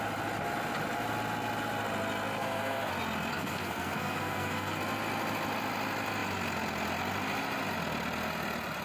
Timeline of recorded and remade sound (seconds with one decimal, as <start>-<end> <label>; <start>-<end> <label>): 0.0-2.4 recorded; 2.4-2.9 remade; 2.9-3.3 recorded; 3.3-4.8 remade; 4.8-8.8 recorded